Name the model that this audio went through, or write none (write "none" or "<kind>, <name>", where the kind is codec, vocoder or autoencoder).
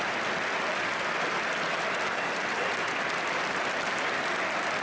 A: none